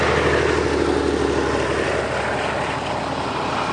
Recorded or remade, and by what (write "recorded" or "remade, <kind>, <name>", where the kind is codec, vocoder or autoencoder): recorded